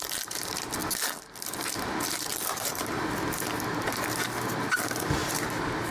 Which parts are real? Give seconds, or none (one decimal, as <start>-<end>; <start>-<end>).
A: 0.0-2.3; 3.0-5.2